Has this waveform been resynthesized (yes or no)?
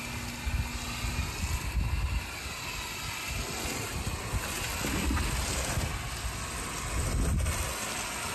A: no